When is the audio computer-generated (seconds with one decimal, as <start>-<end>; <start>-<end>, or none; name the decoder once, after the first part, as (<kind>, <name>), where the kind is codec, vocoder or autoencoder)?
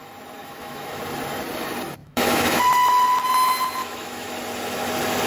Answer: 0.4-1.0 (autoencoder, DAC-VAE); 2.0-2.6; 3.8-4.3